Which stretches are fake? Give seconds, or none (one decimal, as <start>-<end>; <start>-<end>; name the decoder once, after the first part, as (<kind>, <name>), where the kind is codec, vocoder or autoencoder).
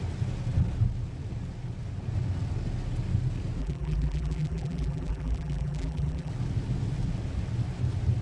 3.6-6.3 (vocoder, BigVGAN v2)